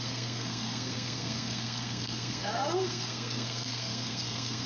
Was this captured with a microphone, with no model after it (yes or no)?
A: no